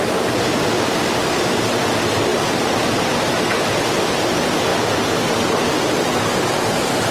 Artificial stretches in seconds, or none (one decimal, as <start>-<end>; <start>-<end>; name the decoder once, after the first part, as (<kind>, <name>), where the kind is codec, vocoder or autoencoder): 2.3-4.0 (vocoder, BigVGAN v2)